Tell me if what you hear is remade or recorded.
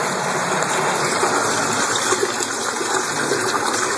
recorded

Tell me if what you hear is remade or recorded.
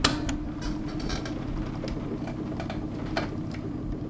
recorded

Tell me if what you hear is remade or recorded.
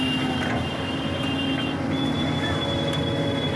recorded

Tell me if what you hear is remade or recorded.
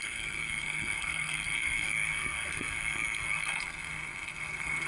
remade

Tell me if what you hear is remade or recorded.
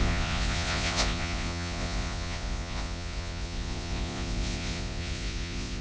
remade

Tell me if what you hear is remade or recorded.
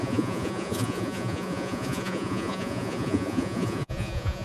remade